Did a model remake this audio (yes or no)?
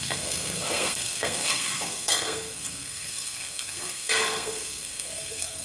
yes